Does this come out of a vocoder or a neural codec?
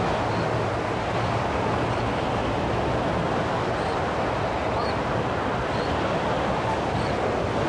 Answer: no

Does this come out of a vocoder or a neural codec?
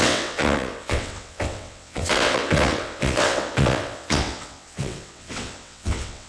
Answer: yes